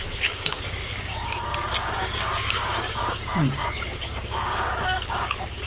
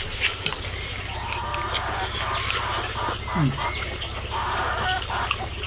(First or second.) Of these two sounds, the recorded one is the second